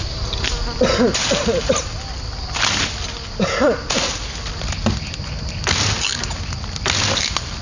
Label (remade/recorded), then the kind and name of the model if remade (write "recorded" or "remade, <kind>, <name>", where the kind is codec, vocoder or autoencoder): recorded